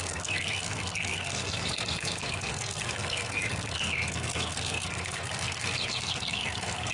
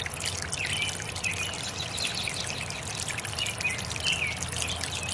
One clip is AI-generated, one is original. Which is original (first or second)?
second